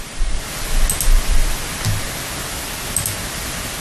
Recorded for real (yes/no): yes